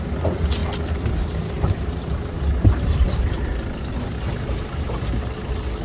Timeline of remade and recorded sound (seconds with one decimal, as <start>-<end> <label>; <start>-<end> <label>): 0.0-0.6 recorded; 0.6-3.9 remade; 3.9-5.8 recorded